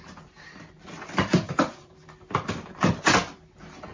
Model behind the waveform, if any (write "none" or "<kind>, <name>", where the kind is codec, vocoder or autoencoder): vocoder, BigVGAN v2